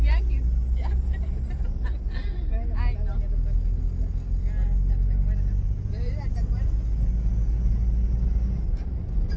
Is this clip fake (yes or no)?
no